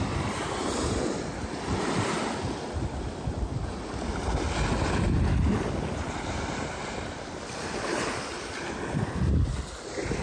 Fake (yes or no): no